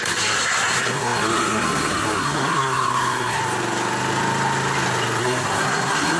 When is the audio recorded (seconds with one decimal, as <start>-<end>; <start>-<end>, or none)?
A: 3.4-5.2